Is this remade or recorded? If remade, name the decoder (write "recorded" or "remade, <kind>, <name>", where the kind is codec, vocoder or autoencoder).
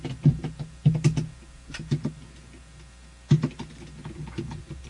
recorded